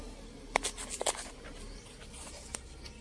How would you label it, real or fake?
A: real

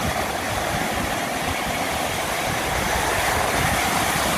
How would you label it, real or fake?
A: real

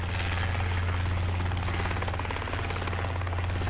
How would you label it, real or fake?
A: real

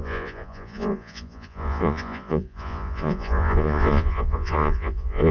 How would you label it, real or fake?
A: fake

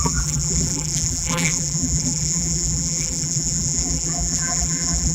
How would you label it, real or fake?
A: fake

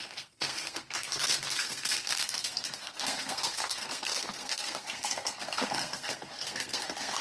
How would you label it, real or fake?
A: fake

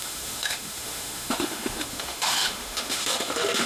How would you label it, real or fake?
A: fake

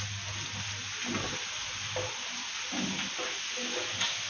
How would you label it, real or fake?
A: real